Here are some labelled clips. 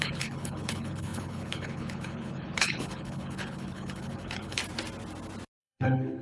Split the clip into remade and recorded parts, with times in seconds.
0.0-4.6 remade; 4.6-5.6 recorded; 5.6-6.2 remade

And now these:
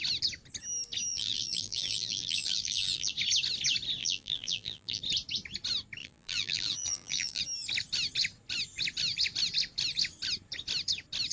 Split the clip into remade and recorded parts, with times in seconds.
0.0-1.1 recorded; 1.1-3.1 remade; 3.1-4.0 recorded; 4.0-5.0 remade; 5.0-6.0 recorded; 6.0-7.4 remade; 7.4-11.3 recorded

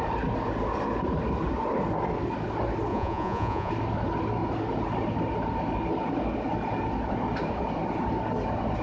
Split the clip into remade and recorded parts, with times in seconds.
0.0-2.9 recorded; 2.9-3.7 remade; 3.7-8.8 recorded

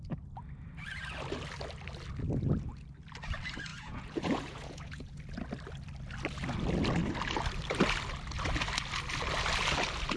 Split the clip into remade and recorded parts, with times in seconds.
0.0-3.7 recorded; 3.7-5.2 remade; 5.2-10.2 recorded

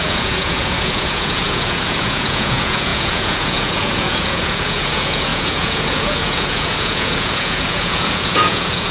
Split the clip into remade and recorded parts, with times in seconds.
0.0-8.9 remade

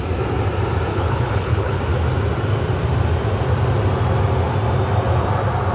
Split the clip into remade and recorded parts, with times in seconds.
0.0-0.9 recorded; 0.9-1.8 remade; 1.8-5.7 recorded

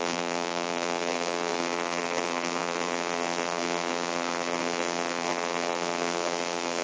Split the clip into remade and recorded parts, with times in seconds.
0.0-6.8 remade

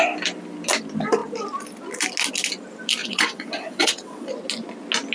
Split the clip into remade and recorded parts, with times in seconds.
0.0-3.0 recorded; 3.0-4.3 remade; 4.3-5.1 recorded